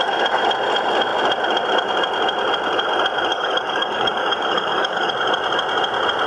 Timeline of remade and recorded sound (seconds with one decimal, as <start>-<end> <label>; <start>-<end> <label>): 0.0-3.3 recorded; 3.3-5.1 remade; 5.1-6.3 recorded